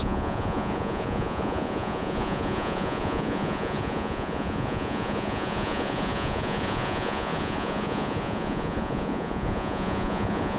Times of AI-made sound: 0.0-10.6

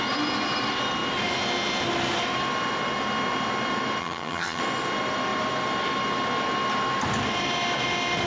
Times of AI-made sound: 4.0-4.6

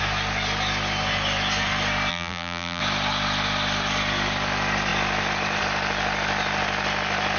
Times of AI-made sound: 2.1-2.8

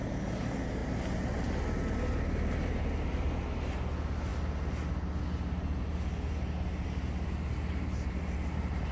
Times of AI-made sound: none

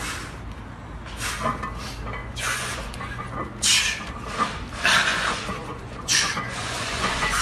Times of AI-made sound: 2.2-3.4; 5.1-7.4